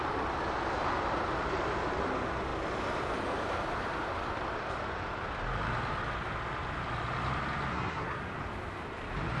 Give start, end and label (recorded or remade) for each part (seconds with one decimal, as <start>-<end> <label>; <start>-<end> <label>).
0.0-7.7 recorded; 7.7-8.2 remade; 8.2-9.4 recorded